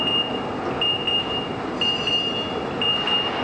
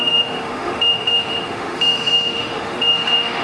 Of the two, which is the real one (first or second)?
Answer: first